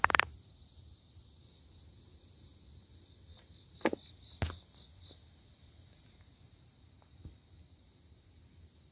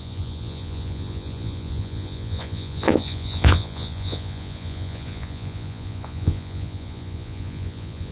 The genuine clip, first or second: first